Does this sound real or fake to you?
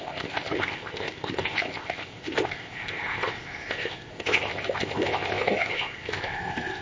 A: fake